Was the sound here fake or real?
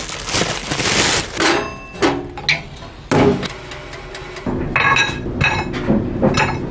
real